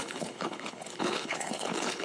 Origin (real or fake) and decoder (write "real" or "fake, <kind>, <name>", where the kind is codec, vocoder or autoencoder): fake, codec, HILCodec